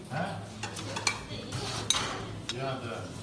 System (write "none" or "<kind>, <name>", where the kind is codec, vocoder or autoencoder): none